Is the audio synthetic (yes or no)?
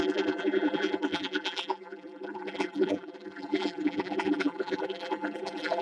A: yes